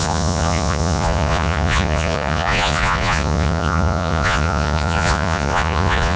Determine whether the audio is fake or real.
fake